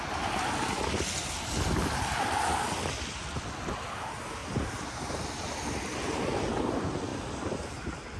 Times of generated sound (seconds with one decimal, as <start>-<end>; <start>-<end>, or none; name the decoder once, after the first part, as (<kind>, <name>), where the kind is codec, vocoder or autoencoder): 4.4-5.2 (vocoder, BigVGAN v2)